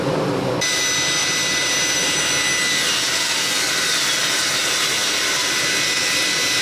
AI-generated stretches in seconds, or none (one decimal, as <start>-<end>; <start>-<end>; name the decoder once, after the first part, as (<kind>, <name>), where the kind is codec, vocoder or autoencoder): 1.2-2.2 (vocoder, BigVGAN v2)